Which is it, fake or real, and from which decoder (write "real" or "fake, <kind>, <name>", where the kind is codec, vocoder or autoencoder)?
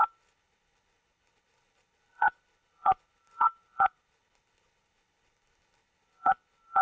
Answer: fake, codec, HILCodec